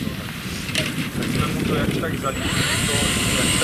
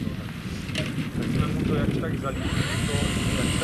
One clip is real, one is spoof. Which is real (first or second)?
second